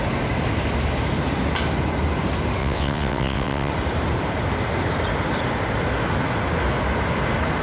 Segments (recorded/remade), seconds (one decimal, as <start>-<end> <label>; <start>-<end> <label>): 0.0-2.6 recorded; 2.6-3.7 remade; 3.7-7.6 recorded